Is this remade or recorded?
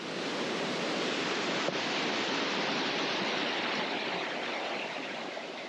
recorded